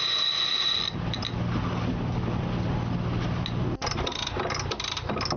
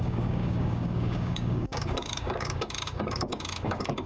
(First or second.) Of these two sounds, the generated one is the second